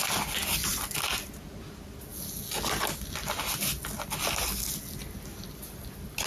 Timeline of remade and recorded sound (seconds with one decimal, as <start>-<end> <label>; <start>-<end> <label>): 0.0-0.4 recorded; 0.4-1.0 remade; 1.0-6.3 recorded